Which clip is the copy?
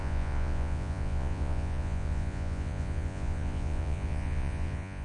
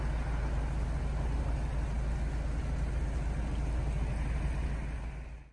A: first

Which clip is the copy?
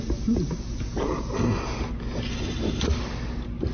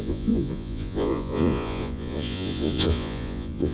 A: second